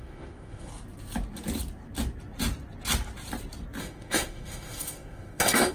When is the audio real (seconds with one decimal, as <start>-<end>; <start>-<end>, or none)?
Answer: 0.7-3.8